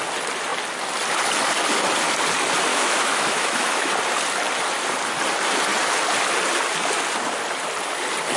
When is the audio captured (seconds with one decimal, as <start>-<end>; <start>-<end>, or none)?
0.0-2.7; 3.9-8.4